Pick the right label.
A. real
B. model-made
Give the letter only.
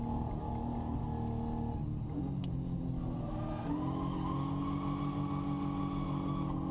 A